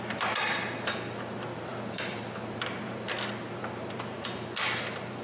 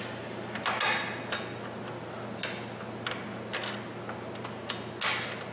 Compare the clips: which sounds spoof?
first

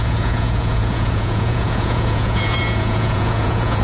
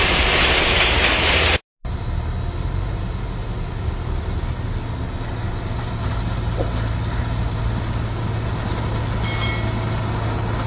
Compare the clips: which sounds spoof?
first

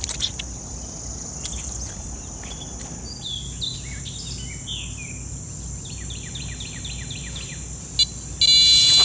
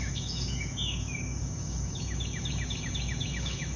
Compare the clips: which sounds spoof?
second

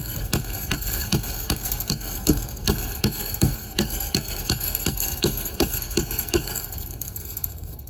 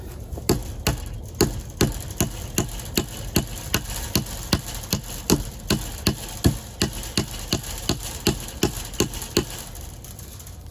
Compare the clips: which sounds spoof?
first